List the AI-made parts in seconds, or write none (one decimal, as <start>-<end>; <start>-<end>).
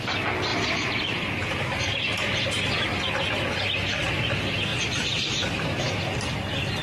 0.5-3.1; 4.7-6.3